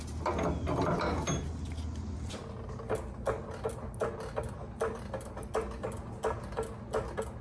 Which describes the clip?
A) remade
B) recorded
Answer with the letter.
B